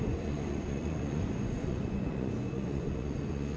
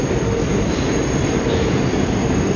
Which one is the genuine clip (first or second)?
second